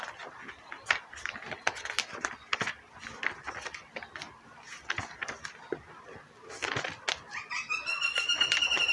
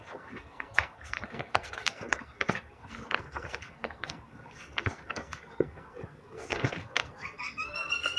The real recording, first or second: first